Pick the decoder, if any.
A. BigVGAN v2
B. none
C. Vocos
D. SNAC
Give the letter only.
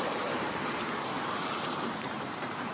A